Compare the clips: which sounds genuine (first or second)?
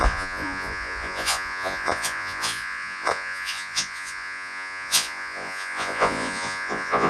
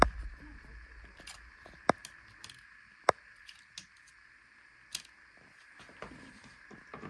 second